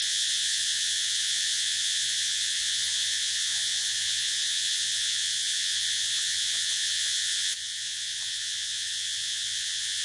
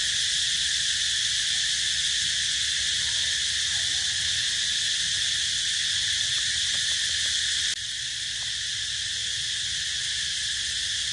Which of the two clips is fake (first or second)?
first